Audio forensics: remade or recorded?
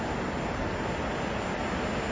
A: recorded